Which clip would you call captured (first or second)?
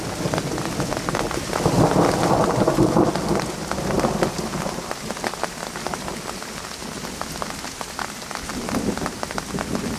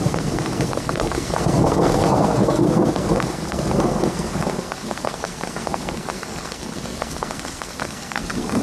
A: first